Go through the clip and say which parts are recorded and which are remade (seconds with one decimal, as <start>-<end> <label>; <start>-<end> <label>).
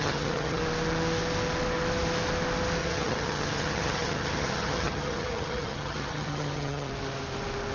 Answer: 0.0-0.6 remade; 0.6-2.8 recorded; 2.8-6.9 remade; 6.9-7.7 recorded